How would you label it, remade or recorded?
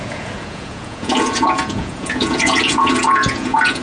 remade